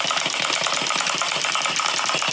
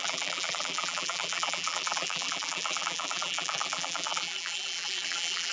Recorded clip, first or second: first